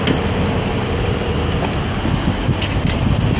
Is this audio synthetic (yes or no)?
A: no